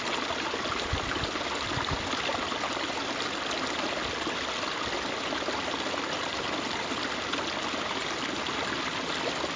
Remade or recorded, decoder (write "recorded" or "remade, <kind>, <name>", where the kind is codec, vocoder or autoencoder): recorded